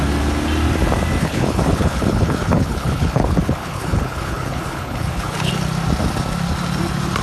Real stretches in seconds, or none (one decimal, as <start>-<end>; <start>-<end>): 0.0-1.2; 5.5-7.2